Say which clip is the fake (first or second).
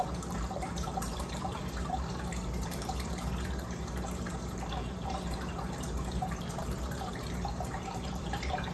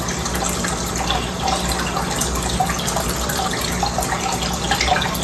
first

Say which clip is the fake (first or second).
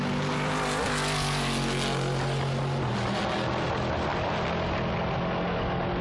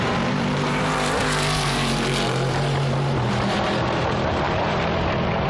second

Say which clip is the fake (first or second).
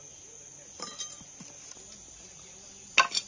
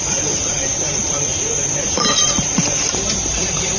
second